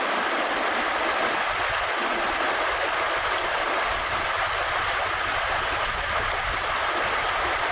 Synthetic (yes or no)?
no